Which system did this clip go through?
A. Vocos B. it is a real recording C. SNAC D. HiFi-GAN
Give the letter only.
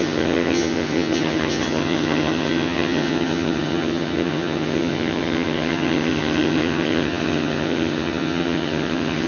D